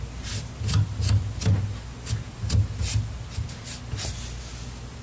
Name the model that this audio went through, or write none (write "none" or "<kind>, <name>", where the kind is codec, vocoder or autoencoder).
none